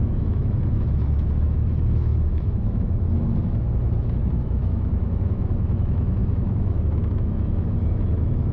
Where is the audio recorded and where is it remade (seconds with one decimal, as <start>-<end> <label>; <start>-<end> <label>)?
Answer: 0.0-8.5 remade